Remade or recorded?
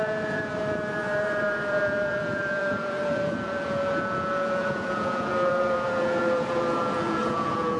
remade